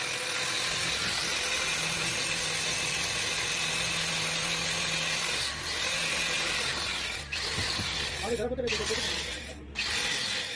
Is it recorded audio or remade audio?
recorded